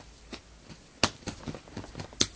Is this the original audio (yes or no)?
yes